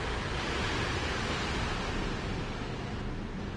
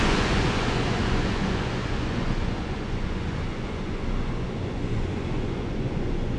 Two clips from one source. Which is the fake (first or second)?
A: second